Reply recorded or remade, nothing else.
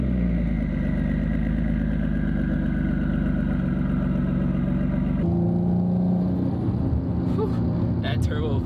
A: recorded